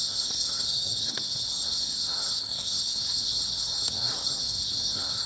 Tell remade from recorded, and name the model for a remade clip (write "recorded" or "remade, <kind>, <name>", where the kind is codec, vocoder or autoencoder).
remade, codec, SNAC